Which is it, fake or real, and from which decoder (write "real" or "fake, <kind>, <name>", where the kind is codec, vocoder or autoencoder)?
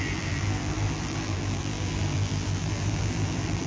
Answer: fake, vocoder, BigVGAN v2